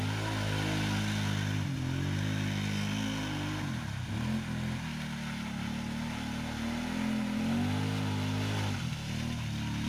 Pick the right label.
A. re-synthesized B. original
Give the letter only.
B